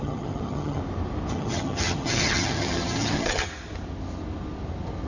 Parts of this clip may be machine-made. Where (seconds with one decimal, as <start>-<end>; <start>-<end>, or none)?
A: 0.0-0.8; 1.3-3.5